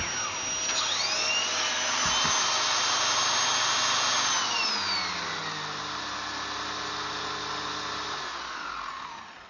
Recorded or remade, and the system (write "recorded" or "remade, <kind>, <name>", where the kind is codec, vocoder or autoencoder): recorded